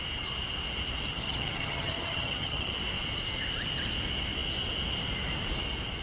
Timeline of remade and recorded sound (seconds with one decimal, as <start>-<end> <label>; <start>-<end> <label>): 0.0-1.1 recorded; 1.1-2.8 remade; 2.8-6.0 recorded